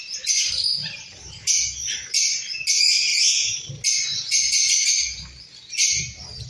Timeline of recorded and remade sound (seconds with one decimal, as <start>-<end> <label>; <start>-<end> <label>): 0.0-0.8 recorded; 0.8-1.6 remade; 1.6-3.1 recorded; 3.1-3.7 remade; 3.7-6.5 recorded